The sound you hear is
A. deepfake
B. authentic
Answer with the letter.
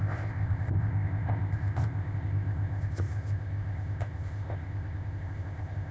A